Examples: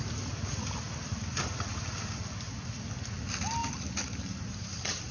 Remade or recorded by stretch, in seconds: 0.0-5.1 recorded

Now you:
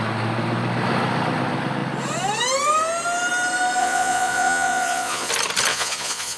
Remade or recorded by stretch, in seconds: 0.0-3.8 recorded; 3.8-5.3 remade; 5.3-5.7 recorded; 5.7-6.4 remade

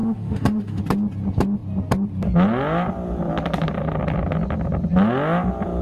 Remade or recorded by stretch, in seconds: 0.0-0.8 remade; 0.8-5.8 recorded

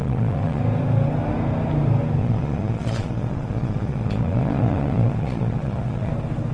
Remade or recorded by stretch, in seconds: 0.0-0.6 remade; 0.6-2.2 recorded; 2.2-6.1 remade; 6.1-6.5 recorded

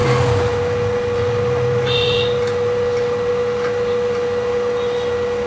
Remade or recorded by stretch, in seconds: 0.0-5.5 recorded